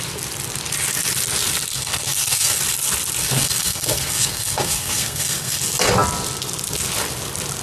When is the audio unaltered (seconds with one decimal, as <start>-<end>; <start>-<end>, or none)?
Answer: 0.0-1.7; 2.6-3.2; 5.6-7.6